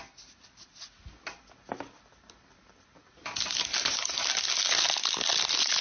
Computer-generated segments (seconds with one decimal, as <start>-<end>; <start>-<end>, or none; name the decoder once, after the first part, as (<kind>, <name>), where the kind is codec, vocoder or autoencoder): none